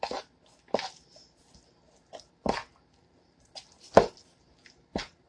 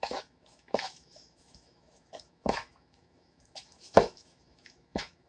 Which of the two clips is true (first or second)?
first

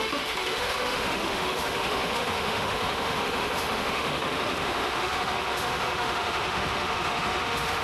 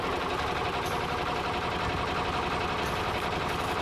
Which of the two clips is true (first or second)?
second